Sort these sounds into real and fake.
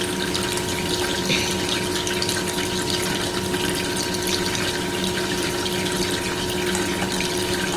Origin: real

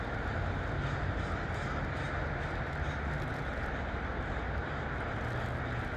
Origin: real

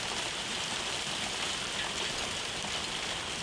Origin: real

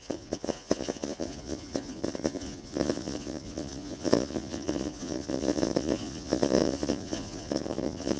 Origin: fake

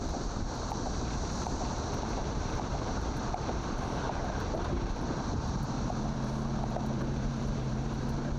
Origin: fake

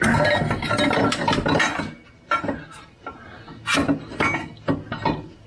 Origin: real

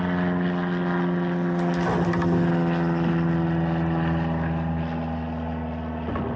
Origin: real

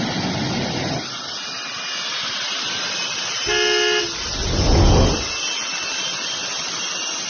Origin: real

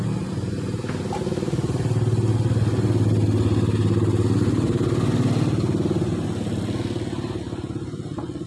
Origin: real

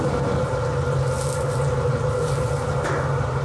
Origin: real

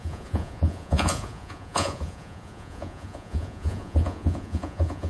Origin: fake